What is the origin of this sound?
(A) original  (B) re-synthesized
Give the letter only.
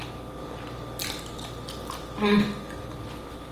A